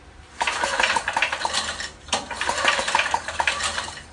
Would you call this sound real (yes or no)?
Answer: no